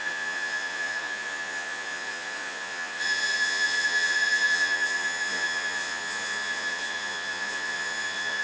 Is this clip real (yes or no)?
no